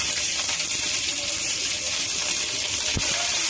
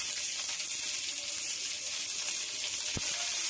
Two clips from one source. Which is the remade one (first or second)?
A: first